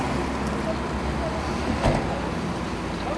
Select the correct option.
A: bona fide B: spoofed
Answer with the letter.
A